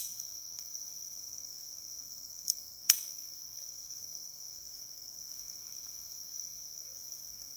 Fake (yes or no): yes